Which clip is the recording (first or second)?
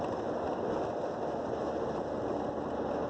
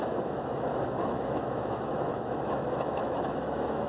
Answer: first